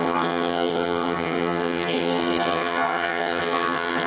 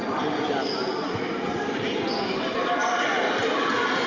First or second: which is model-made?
first